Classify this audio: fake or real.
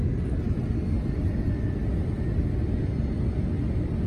real